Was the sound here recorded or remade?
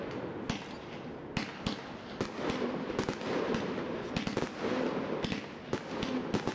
recorded